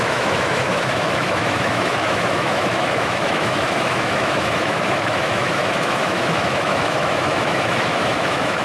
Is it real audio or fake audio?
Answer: fake